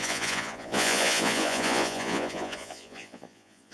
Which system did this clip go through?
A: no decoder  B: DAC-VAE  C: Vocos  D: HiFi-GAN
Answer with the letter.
C